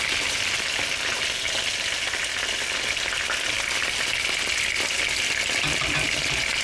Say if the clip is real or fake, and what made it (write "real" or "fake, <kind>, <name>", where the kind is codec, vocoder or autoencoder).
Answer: real